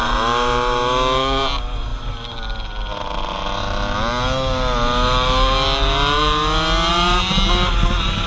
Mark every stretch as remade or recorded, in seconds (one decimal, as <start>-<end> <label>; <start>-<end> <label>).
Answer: 0.0-8.3 recorded